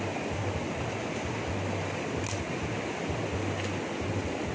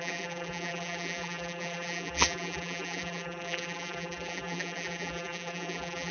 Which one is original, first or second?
first